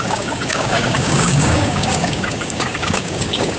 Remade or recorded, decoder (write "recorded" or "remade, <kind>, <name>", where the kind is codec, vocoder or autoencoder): remade, codec, DAC